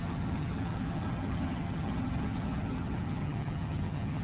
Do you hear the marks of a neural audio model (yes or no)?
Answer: yes